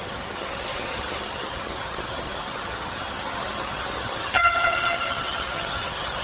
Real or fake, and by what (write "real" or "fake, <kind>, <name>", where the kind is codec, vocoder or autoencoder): fake, vocoder, HiFi-GAN